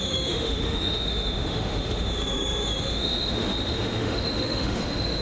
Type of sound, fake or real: fake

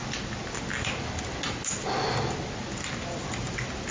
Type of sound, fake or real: real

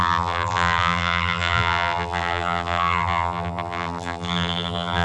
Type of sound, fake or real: fake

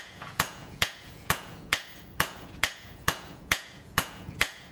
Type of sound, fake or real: fake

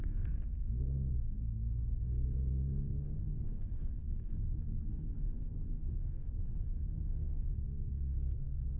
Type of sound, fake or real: fake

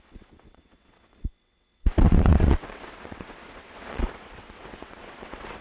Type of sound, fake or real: fake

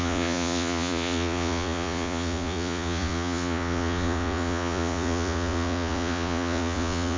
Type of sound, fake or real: fake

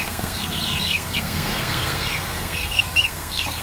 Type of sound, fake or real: fake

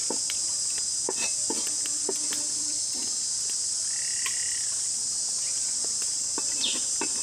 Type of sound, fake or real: real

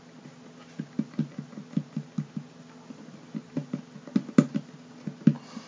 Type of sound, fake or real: real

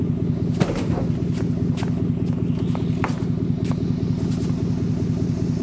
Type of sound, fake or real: real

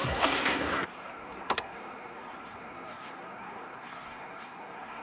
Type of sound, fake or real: fake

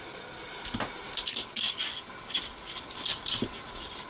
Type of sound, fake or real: real